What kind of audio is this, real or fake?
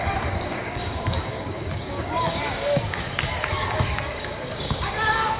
fake